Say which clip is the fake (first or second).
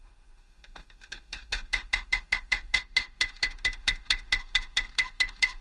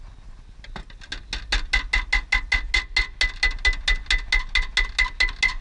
first